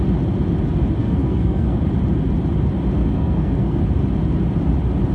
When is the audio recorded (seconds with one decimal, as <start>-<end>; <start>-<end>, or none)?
0.0-1.0; 1.8-3.0; 3.8-5.1